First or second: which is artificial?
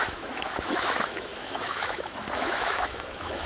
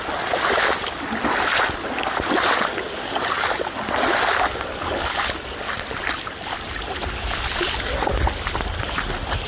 first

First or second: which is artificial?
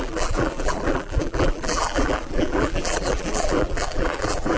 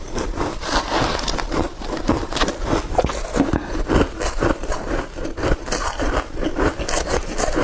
first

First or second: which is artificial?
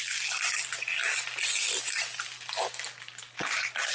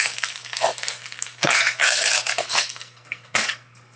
second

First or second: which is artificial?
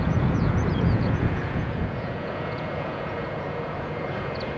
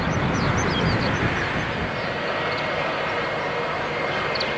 first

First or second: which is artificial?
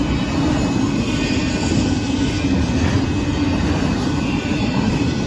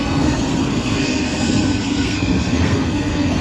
second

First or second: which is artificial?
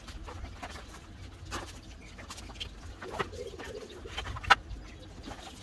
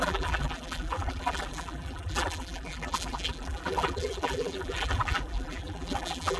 second